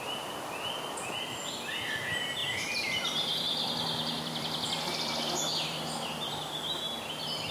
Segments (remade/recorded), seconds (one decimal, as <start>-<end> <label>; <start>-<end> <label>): 0.0-2.4 recorded; 2.4-6.3 remade; 6.3-7.5 recorded

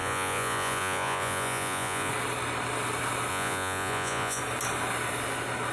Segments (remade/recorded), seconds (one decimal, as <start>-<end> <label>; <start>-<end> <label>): 0.0-2.1 remade; 2.1-3.3 recorded; 3.3-4.4 remade; 4.4-5.7 recorded

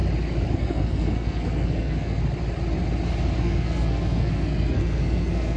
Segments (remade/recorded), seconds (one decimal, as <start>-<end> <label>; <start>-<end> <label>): 0.0-0.5 recorded; 0.5-2.2 remade; 2.2-3.4 recorded; 3.4-5.6 remade

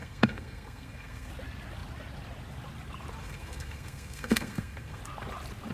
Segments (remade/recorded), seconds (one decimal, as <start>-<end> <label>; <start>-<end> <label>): 0.0-1.3 remade; 1.3-3.2 recorded; 3.2-5.0 remade; 5.0-5.7 recorded

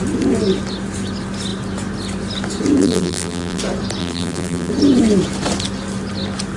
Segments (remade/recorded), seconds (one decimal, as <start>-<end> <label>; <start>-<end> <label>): 0.0-2.8 recorded; 2.8-3.6 remade; 3.6-4.0 recorded; 4.0-4.7 remade; 4.7-6.6 recorded

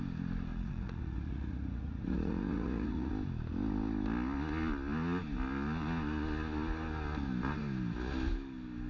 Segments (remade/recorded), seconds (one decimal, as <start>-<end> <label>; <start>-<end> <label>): 0.0-0.5 recorded; 0.5-3.1 remade; 3.1-8.9 recorded

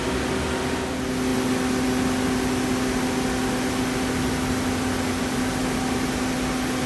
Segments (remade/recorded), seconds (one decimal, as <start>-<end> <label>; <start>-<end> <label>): 0.0-6.9 recorded

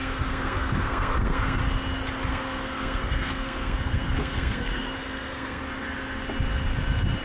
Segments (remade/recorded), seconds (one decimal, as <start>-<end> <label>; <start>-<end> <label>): 0.0-1.6 remade; 1.6-2.3 recorded; 2.3-5.6 remade; 5.6-7.2 recorded